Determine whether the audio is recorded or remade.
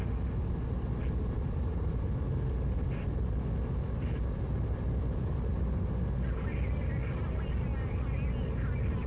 recorded